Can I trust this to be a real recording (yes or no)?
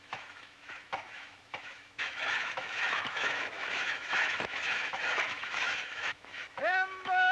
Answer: no